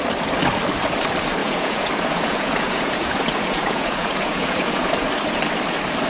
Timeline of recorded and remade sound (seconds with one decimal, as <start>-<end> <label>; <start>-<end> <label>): 0.0-1.4 recorded; 1.4-5.1 remade; 5.1-6.1 recorded